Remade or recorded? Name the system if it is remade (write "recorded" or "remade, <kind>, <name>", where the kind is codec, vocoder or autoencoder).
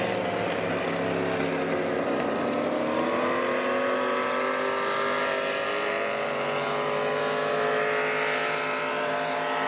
recorded